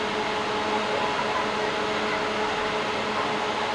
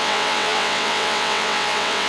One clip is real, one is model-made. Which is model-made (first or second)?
second